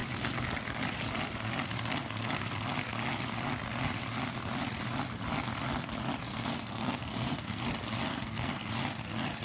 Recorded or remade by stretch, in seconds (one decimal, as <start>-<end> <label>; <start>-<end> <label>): 0.0-6.3 recorded; 6.3-7.7 remade; 7.7-8.1 recorded; 8.1-8.7 remade; 8.7-9.4 recorded